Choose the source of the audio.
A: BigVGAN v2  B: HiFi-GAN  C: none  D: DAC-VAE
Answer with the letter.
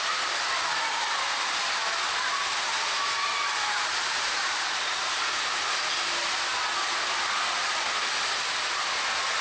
C